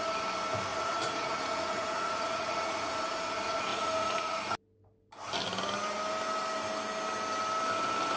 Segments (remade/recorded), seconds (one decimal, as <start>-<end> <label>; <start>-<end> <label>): 0.0-0.7 recorded; 0.7-2.9 remade; 2.9-3.7 recorded; 3.7-4.4 remade; 4.4-8.2 recorded